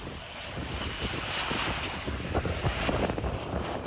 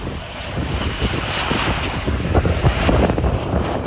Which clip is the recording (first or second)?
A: second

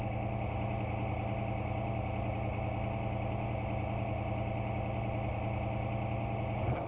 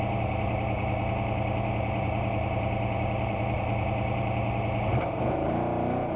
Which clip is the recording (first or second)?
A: first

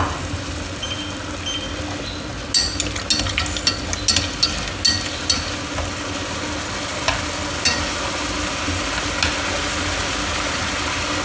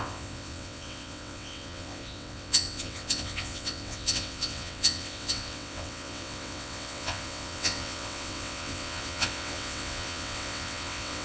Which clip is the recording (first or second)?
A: first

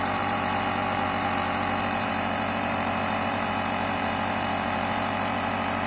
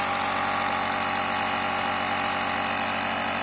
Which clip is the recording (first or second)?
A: second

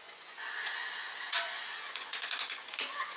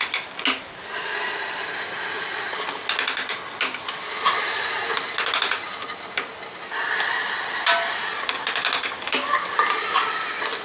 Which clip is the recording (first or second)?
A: second